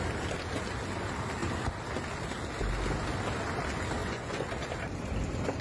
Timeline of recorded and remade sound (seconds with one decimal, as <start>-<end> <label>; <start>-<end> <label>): 0.0-4.0 recorded; 4.0-4.5 remade; 4.5-5.6 recorded